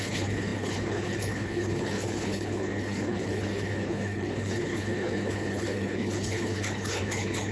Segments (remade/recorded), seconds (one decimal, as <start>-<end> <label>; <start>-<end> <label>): 0.0-7.5 remade